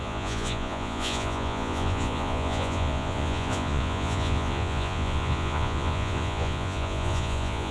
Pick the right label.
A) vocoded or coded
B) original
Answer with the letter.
A